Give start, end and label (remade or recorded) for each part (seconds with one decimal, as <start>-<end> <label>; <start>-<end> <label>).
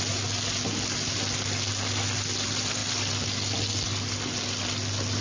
0.0-5.2 recorded